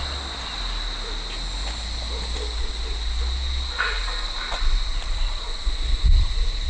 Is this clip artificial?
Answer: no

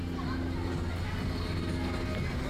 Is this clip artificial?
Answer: no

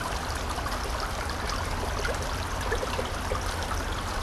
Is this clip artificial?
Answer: no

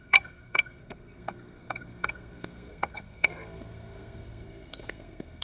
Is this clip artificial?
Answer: yes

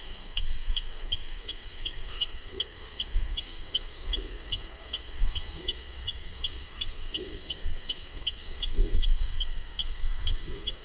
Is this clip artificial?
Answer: yes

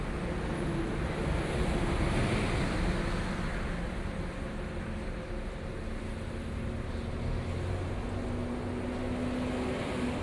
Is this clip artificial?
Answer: no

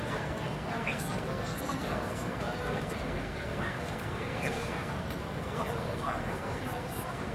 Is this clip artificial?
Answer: yes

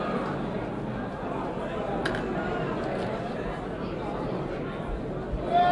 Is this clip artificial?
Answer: no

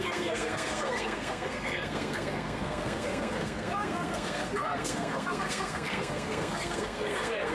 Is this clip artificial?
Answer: yes